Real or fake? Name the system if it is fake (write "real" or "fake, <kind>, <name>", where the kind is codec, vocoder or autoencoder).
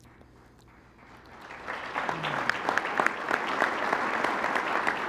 real